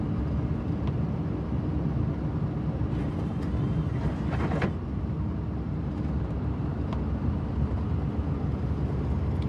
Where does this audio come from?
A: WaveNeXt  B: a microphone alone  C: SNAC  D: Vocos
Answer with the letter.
B